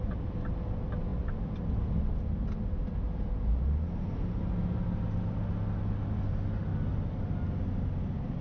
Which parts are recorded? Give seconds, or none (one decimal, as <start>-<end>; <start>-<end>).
0.0-8.4